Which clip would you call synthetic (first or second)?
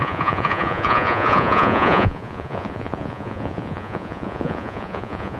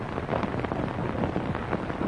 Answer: first